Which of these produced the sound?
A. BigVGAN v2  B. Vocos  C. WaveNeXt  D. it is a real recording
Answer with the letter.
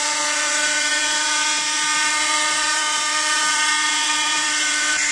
B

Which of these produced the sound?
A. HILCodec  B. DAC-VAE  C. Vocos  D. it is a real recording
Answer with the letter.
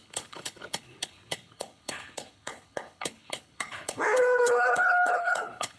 A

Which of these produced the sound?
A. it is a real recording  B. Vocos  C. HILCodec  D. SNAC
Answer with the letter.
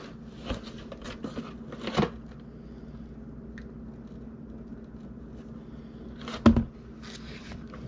A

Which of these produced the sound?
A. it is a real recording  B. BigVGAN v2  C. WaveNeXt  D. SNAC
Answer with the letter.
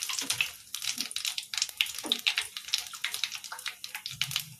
A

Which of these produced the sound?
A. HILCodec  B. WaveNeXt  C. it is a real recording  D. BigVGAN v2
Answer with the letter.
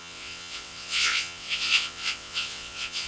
B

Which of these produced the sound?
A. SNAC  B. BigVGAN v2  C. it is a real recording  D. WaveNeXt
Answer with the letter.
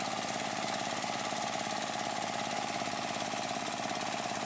C